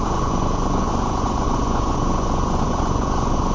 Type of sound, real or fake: fake